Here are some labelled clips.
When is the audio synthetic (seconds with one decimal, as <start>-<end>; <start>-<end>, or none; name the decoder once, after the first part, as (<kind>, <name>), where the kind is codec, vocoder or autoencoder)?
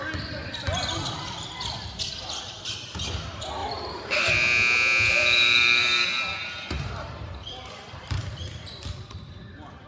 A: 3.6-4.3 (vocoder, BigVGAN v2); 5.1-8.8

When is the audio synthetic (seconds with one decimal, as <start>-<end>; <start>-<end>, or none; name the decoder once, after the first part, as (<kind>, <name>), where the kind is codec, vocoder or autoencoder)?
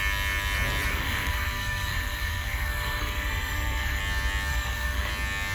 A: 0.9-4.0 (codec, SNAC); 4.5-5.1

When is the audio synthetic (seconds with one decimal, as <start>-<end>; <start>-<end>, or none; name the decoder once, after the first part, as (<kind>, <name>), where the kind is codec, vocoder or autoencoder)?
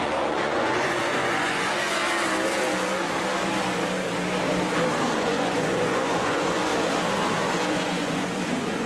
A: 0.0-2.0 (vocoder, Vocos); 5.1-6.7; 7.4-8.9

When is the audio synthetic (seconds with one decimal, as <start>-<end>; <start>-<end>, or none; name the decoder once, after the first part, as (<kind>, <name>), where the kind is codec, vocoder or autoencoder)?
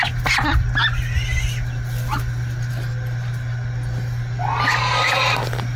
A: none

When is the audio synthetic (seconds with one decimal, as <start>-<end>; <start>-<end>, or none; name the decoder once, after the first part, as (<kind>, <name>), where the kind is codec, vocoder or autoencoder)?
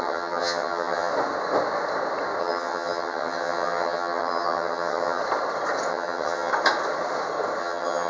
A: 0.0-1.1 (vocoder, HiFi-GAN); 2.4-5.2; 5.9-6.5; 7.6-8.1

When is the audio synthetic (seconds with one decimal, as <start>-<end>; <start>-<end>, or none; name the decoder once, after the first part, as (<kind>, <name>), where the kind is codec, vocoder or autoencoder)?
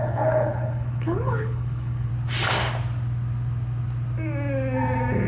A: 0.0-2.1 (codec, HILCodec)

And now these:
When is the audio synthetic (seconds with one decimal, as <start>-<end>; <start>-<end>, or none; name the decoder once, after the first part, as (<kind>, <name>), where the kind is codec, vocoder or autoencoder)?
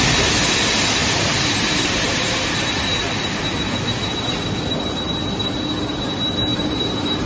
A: 1.0-2.5 (vocoder, BigVGAN v2); 6.5-7.3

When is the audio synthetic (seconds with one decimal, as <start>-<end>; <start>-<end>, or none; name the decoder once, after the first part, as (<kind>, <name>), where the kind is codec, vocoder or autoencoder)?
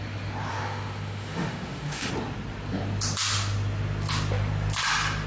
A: 0.5-2.1 (autoencoder, DAC-VAE)